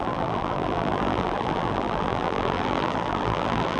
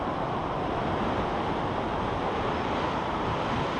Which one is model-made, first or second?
first